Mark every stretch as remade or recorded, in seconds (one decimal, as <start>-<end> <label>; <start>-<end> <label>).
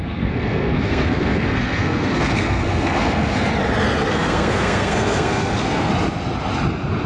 0.0-3.5 remade; 3.5-4.1 recorded; 4.1-5.9 remade; 5.9-7.1 recorded